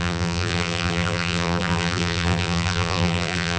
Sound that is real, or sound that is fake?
fake